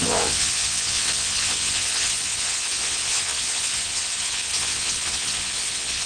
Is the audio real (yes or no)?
no